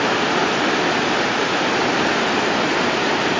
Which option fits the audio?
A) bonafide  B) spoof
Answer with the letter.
A